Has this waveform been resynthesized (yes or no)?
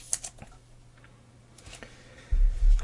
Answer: no